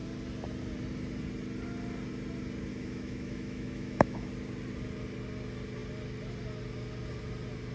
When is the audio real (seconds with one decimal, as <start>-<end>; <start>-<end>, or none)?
0.0-2.7; 4.3-7.7